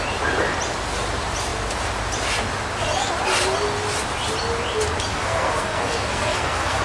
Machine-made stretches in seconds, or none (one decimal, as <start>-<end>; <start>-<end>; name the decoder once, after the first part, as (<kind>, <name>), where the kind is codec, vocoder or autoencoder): 5.1-6.8 (codec, SNAC)